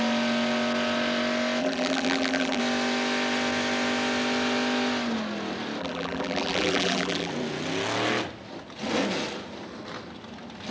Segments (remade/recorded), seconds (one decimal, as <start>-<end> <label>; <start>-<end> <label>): 0.0-1.6 recorded; 1.6-2.6 remade; 2.6-5.8 recorded; 5.8-7.3 remade; 7.3-10.7 recorded